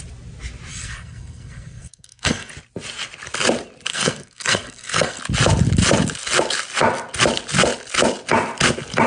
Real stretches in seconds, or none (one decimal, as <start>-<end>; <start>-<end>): 0.0-0.7; 2.5-3.9; 5.2-9.1